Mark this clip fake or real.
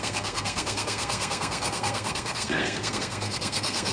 fake